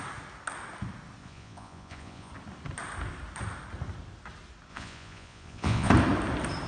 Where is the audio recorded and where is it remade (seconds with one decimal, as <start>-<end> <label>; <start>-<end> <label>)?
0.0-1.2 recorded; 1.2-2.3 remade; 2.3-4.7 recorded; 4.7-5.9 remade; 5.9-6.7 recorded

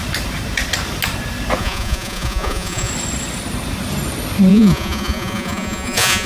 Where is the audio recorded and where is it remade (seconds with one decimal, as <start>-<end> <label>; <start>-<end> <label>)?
0.0-1.6 recorded; 1.6-2.9 remade; 2.9-4.5 recorded; 4.5-6.3 remade

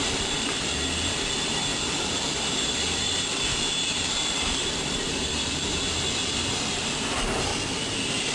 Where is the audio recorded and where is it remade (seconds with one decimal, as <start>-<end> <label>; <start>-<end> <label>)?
0.0-7.5 remade; 7.5-8.3 recorded

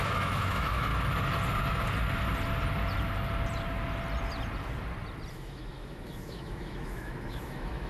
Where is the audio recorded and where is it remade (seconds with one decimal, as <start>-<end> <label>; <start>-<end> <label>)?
0.0-0.9 remade; 0.9-5.3 recorded; 5.3-7.9 remade